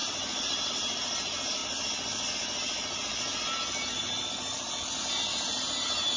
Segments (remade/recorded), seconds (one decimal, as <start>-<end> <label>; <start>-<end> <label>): 0.0-1.6 remade; 1.6-5.0 recorded; 5.0-6.2 remade